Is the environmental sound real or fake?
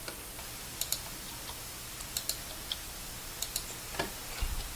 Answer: real